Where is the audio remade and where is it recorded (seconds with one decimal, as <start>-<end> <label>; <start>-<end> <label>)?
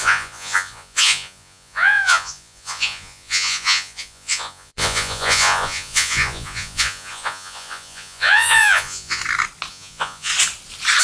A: 0.0-9.2 remade; 9.2-9.7 recorded; 9.7-10.3 remade; 10.3-11.0 recorded